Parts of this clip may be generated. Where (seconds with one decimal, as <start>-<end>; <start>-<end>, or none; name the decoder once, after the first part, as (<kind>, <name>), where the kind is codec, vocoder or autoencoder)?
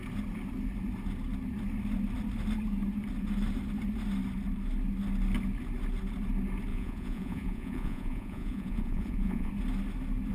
6.7-9.5 (vocoder, Vocos)